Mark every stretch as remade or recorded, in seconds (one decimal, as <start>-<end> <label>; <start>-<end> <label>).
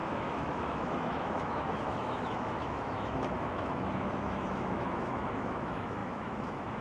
0.0-6.8 remade